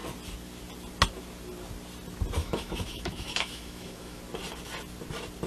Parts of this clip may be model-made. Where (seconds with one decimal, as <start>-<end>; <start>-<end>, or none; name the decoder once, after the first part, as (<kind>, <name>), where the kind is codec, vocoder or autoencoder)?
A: 2.4-4.2 (autoencoder, DAC-VAE)